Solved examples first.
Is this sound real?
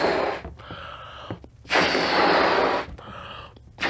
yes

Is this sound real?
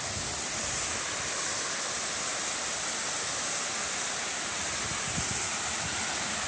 yes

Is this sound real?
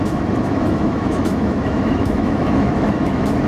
no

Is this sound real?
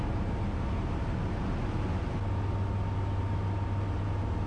yes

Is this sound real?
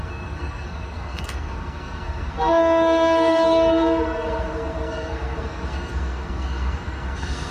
no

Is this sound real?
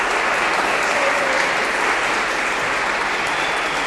yes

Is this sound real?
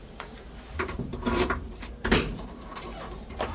no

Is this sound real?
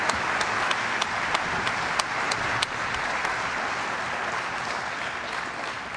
yes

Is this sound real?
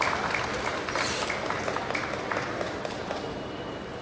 yes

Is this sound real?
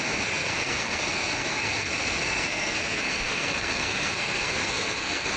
no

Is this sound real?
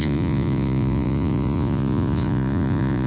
no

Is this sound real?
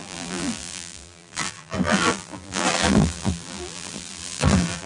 no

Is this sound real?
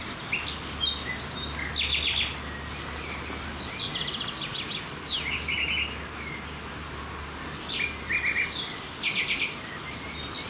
yes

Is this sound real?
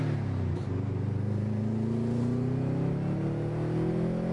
yes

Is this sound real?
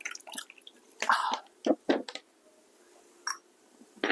yes